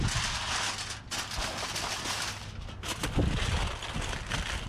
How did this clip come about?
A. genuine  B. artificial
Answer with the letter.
A